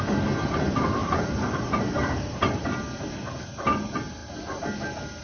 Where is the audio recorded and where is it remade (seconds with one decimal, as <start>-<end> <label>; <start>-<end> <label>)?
0.0-1.0 recorded; 1.0-1.8 remade; 1.8-5.2 recorded